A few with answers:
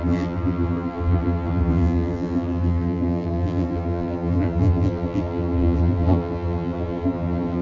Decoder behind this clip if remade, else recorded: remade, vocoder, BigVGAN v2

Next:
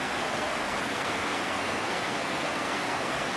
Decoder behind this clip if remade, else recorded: remade, codec, SNAC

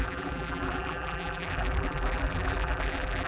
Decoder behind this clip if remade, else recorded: remade, vocoder, BigVGAN v2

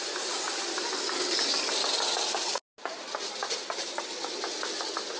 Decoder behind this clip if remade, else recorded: recorded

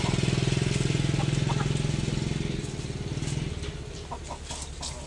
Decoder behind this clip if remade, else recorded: recorded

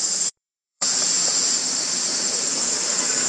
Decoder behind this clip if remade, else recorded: remade, vocoder, Vocos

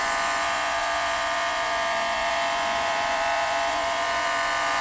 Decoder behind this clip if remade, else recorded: remade, vocoder, Vocos